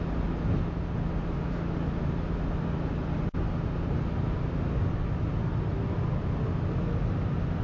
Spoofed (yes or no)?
no